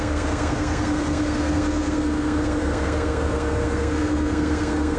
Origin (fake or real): fake